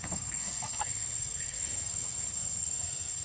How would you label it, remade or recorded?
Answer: remade